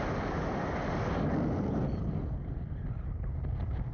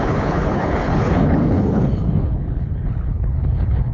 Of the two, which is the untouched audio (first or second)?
first